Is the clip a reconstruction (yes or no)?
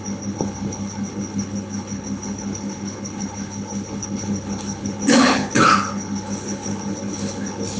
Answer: yes